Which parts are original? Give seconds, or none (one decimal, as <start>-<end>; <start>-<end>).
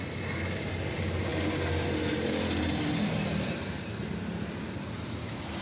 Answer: 0.0-5.6